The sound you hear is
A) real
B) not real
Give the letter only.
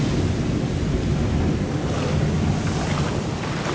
A